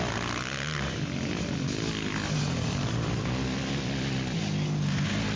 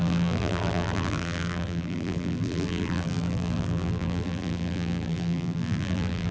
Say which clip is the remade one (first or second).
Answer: second